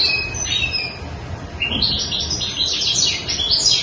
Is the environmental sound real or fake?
real